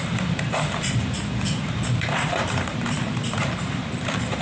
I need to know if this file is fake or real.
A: fake